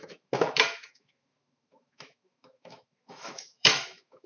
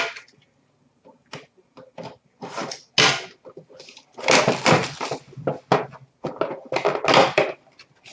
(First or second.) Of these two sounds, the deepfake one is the first